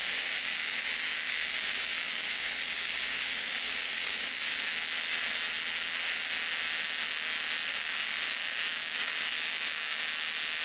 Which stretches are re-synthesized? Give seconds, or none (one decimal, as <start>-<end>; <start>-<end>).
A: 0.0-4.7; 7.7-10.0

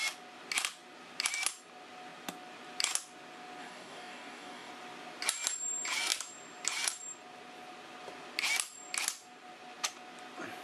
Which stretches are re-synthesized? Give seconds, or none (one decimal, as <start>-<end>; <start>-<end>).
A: 3.6-4.7

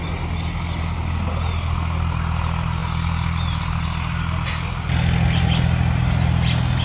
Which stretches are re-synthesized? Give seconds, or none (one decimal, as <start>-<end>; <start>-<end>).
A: none